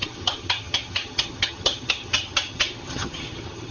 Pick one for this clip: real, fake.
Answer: fake